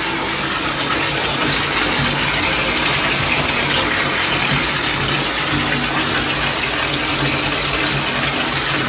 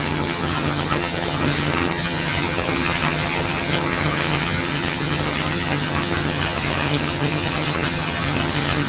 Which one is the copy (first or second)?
second